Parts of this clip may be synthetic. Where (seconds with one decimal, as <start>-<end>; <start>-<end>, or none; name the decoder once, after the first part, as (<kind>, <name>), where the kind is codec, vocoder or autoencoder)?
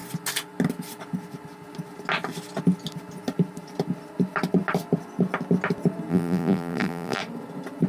6.1-7.2 (vocoder, BigVGAN v2)